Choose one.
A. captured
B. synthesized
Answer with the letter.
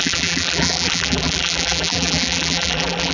B